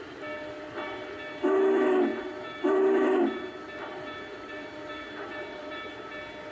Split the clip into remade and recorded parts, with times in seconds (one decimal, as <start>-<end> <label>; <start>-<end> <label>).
0.0-2.1 recorded; 2.1-6.0 remade; 6.0-6.5 recorded